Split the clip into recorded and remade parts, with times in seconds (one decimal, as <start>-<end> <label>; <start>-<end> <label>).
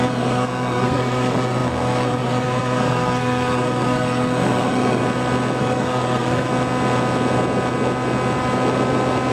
0.0-5.0 remade; 5.0-5.6 recorded; 5.6-6.5 remade; 6.5-9.3 recorded